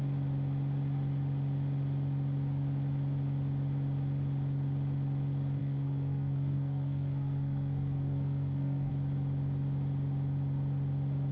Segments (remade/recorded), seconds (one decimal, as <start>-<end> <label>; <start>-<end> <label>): 0.0-5.6 recorded; 5.6-8.9 remade; 8.9-11.3 recorded